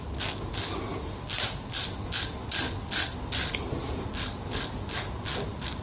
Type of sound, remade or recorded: recorded